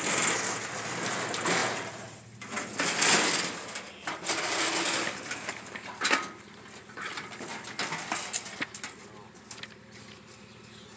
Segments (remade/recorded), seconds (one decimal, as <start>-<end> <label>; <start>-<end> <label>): 0.0-11.0 recorded